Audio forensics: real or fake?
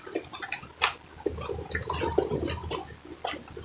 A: real